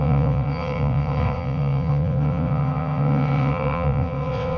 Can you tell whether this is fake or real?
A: fake